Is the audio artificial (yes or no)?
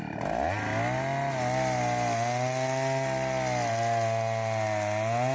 no